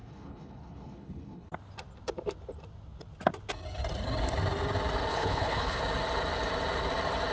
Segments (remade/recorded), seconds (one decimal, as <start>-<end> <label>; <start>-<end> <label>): 0.0-1.5 remade; 1.5-5.1 recorded; 5.1-5.8 remade; 5.8-7.3 recorded